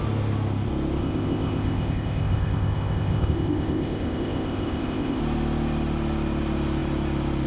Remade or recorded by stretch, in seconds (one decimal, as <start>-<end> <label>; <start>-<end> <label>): 0.0-1.0 recorded; 1.0-5.2 remade; 5.2-7.5 recorded